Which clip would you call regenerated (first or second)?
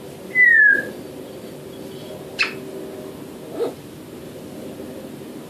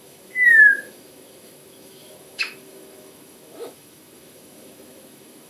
second